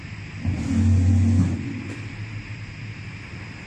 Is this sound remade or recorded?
recorded